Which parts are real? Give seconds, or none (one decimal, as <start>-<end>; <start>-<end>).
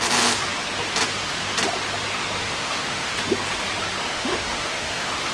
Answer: 0.0-2.4; 3.2-4.1